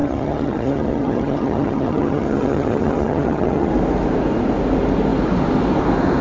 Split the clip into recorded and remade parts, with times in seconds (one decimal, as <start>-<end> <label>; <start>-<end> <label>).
0.0-3.7 remade; 3.7-6.2 recorded